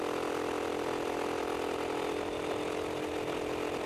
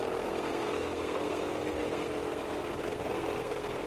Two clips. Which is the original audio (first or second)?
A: first